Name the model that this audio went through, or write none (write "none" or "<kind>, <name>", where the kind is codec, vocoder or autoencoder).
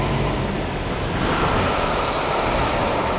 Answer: none